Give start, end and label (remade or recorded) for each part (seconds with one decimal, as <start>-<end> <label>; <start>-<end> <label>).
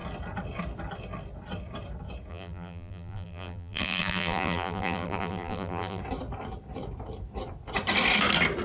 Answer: 0.0-2.3 recorded; 2.3-6.0 remade; 6.0-8.6 recorded